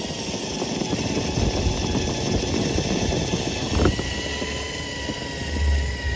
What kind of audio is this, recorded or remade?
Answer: recorded